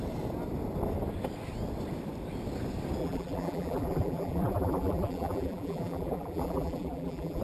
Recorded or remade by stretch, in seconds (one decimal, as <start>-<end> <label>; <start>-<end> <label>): 0.0-3.0 recorded; 3.0-7.4 remade